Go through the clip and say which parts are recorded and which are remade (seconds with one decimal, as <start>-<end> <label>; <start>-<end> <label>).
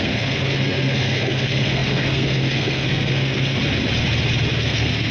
0.0-3.6 remade; 3.6-4.5 recorded; 4.5-5.1 remade